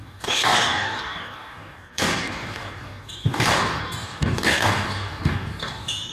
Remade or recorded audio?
remade